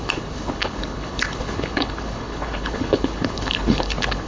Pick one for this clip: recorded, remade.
remade